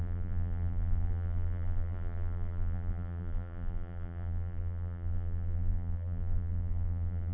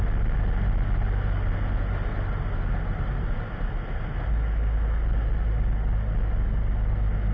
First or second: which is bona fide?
second